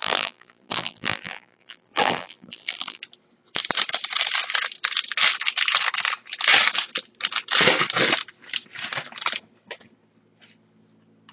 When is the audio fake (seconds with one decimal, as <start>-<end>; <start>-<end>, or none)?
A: 0.0-3.0